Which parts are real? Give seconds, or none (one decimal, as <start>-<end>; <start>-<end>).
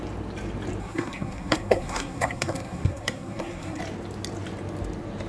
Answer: 0.0-0.8; 3.8-5.3